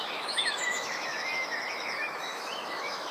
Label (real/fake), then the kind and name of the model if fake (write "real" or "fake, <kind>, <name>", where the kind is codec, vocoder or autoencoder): fake, autoencoder, DAC-VAE